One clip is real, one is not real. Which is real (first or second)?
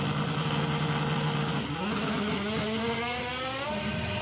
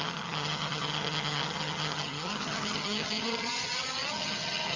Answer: first